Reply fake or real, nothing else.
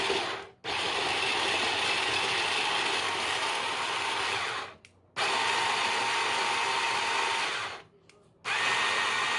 real